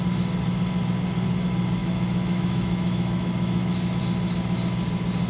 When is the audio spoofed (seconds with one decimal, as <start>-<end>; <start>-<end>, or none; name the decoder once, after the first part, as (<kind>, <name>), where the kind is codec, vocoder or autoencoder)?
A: 1.8-4.0 (autoencoder, DAC-VAE)